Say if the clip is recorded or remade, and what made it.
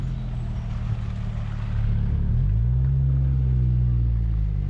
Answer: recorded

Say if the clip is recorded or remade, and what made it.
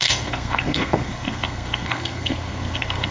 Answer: remade, codec, SNAC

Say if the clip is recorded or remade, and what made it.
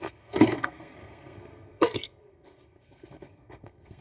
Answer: remade, codec, SNAC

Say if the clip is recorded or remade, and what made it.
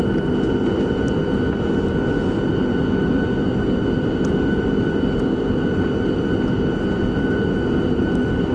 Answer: recorded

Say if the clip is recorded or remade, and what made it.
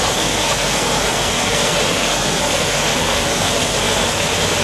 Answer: remade, codec, SNAC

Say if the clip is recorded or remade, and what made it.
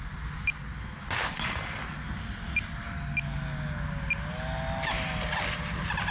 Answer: recorded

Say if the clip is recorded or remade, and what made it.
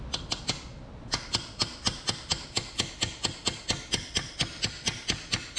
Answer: recorded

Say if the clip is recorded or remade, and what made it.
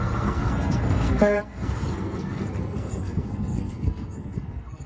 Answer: remade, codec, SNAC